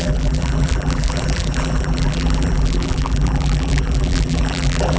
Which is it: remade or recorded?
remade